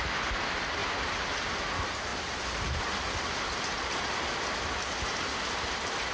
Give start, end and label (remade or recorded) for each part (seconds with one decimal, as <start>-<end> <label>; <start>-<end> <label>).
0.0-6.1 recorded